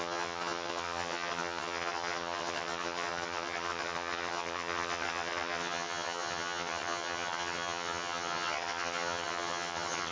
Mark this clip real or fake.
fake